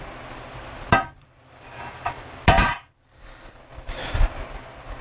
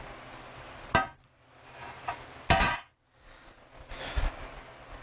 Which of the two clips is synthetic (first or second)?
first